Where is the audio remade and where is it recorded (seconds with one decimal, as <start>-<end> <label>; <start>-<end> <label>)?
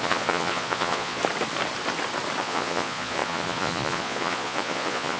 0.0-1.2 remade; 1.2-2.4 recorded; 2.4-5.2 remade